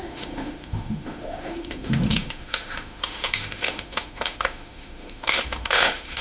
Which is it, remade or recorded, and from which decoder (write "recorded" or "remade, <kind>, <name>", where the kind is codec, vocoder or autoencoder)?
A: remade, autoencoder, DAC-VAE